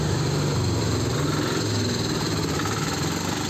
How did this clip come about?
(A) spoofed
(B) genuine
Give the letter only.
B